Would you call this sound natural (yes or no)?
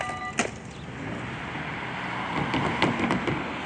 yes